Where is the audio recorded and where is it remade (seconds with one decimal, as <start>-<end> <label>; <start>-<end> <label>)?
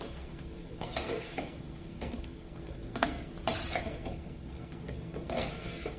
0.0-3.3 remade; 3.3-3.8 recorded; 3.8-6.0 remade